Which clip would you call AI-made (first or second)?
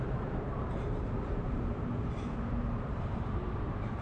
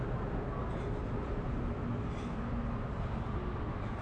first